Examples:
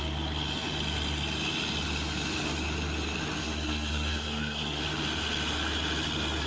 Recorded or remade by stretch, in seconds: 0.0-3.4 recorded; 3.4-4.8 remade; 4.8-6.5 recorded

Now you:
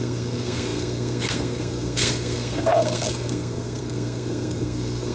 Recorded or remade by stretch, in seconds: 0.0-5.1 remade

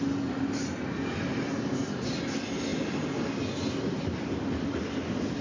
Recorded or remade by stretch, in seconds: 0.0-5.4 recorded